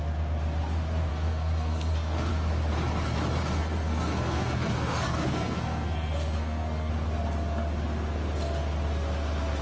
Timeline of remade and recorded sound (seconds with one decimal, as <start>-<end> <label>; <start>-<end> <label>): 0.0-1.1 recorded; 1.1-2.3 remade; 2.3-3.6 recorded; 3.6-6.9 remade; 6.9-9.6 recorded